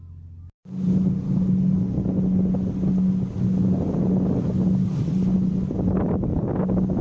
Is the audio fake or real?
real